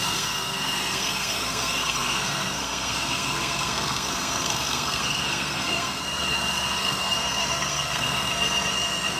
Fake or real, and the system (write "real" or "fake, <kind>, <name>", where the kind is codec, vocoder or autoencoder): fake, codec, SNAC